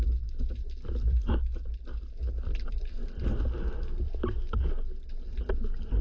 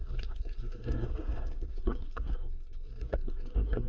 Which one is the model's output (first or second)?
second